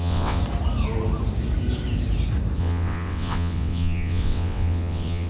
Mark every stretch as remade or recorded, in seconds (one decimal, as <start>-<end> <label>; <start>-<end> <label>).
0.0-0.4 remade; 0.4-2.6 recorded; 2.6-5.3 remade